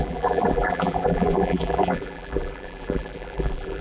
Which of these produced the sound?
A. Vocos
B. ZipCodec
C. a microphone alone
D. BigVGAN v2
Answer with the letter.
D